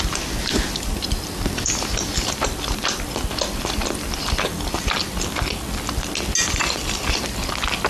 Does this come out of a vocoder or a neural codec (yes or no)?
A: no